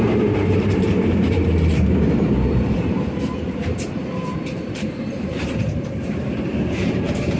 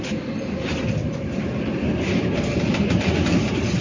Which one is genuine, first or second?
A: second